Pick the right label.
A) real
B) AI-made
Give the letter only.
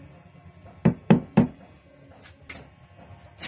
A